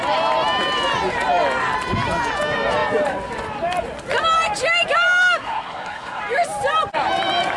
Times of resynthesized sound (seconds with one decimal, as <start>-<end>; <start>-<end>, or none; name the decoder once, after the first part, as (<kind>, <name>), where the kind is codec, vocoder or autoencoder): 5.4-6.2 (codec, SNAC)